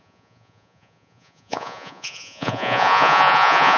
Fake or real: fake